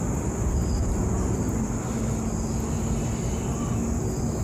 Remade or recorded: recorded